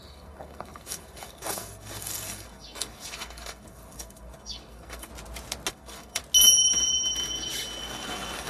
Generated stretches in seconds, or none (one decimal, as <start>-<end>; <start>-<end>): 0.0-5.1; 5.7-6.2; 7.8-8.5